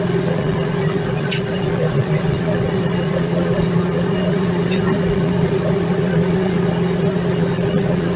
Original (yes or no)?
no